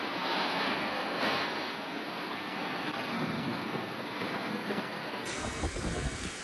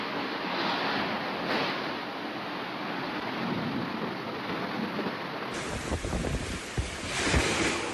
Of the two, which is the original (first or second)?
second